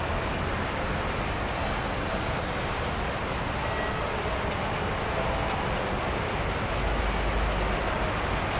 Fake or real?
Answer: real